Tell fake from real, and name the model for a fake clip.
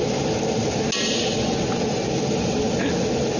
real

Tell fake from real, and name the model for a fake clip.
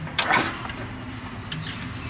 real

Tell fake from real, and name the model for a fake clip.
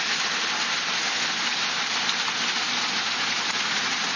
real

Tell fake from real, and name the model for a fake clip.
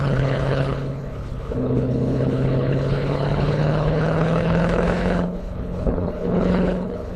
fake, codec, HILCodec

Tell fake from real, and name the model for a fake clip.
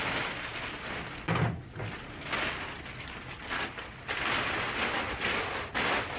real